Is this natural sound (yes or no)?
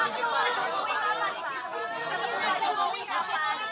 yes